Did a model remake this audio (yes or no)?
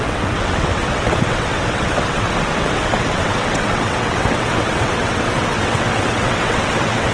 yes